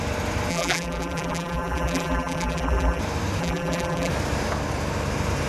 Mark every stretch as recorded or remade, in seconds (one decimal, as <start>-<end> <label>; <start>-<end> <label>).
0.0-0.5 recorded; 0.5-3.0 remade; 3.0-3.4 recorded; 3.4-4.1 remade; 4.1-5.5 recorded